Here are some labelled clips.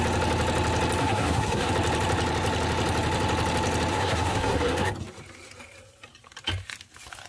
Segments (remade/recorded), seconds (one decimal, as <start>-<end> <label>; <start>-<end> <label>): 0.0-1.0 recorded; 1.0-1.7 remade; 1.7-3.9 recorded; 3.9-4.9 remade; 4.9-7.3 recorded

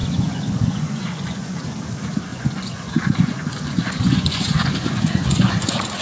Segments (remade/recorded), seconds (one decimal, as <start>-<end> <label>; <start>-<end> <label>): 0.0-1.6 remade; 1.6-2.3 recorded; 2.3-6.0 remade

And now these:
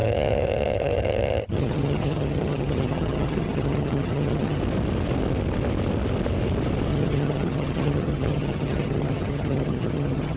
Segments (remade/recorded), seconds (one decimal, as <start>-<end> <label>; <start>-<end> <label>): 0.0-4.6 remade; 4.6-6.9 recorded; 6.9-10.4 remade

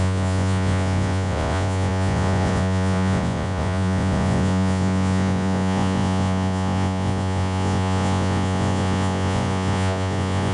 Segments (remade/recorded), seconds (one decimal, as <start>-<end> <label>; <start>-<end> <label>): 0.0-10.5 remade